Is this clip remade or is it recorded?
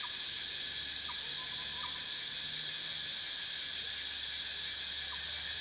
recorded